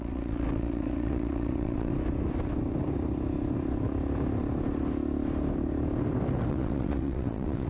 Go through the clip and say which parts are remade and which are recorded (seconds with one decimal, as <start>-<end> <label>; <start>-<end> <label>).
0.0-1.9 remade; 1.9-6.5 recorded; 6.5-7.7 remade

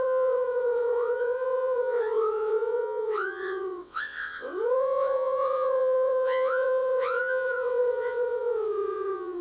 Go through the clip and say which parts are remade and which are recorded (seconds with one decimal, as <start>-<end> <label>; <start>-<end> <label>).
0.0-9.4 remade

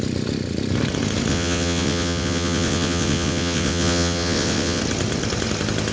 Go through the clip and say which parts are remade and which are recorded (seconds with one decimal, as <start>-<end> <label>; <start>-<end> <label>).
0.0-1.3 recorded; 1.3-4.8 remade; 4.8-5.9 recorded

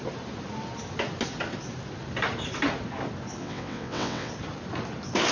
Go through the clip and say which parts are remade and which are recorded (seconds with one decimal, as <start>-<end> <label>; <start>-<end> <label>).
0.0-3.4 recorded; 3.4-4.3 remade; 4.3-5.3 recorded